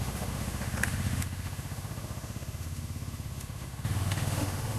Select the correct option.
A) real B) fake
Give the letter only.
B